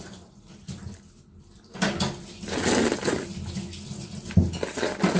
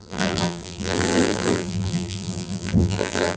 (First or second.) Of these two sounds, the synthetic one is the second